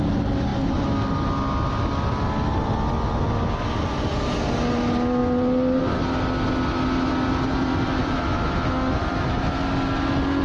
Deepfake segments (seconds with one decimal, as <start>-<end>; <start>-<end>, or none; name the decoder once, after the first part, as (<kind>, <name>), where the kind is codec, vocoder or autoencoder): 8.0-9.6 (autoencoder, DAC-VAE)